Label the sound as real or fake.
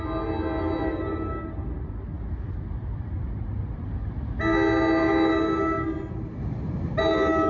real